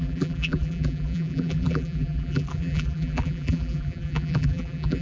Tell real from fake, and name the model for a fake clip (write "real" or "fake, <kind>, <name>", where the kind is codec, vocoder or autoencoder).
fake, vocoder, BigVGAN v2